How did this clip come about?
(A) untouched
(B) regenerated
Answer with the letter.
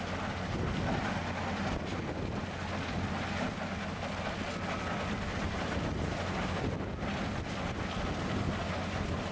A